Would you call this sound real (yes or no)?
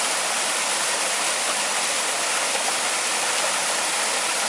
yes